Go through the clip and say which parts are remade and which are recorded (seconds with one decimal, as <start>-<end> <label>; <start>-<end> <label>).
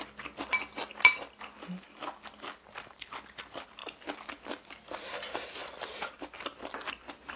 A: 0.0-7.4 recorded